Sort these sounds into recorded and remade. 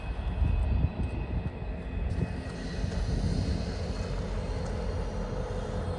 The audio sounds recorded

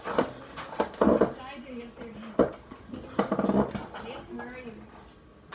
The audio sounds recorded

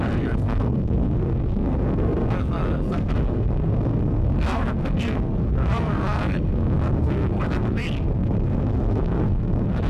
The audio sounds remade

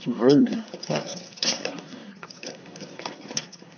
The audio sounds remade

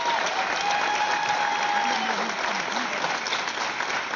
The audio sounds recorded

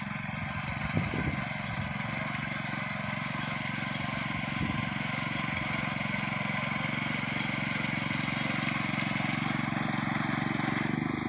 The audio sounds recorded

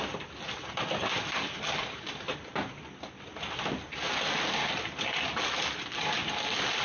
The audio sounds recorded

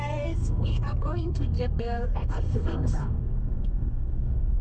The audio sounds remade